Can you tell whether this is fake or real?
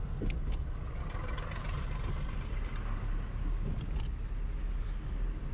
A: real